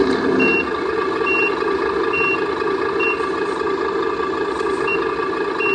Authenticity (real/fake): real